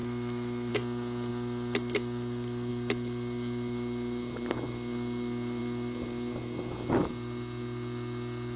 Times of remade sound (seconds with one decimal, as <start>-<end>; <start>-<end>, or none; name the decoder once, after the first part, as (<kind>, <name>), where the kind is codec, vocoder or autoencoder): 0.0-0.7 (autoencoder, DAC-VAE)